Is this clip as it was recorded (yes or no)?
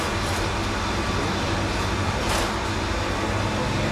yes